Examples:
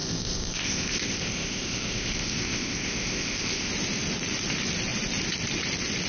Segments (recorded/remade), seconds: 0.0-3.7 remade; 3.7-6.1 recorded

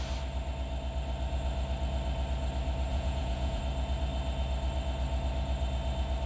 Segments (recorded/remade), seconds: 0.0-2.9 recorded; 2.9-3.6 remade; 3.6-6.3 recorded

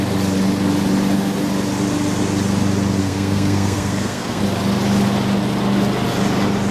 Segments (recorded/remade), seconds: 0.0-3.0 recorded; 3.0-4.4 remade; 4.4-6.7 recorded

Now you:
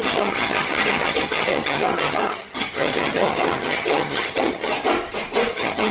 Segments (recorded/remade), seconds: 0.0-4.7 remade; 4.7-5.5 recorded; 5.5-5.9 remade